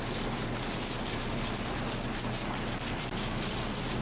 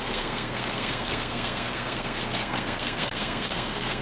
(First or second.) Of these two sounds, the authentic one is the first